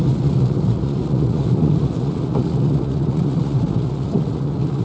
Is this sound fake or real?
fake